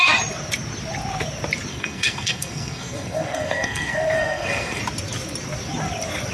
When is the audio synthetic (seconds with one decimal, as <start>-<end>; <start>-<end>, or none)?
1.7-4.8